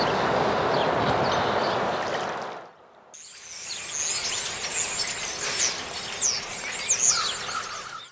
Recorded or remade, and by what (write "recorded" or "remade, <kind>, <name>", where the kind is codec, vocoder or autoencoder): recorded